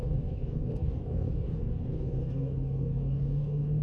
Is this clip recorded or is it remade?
remade